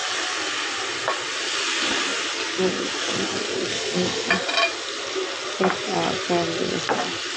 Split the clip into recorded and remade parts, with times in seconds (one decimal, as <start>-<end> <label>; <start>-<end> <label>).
0.0-3.7 recorded; 3.7-4.3 remade; 4.3-7.4 recorded